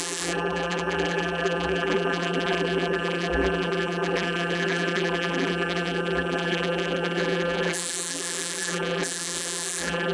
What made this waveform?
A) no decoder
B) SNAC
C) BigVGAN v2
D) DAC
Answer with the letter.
C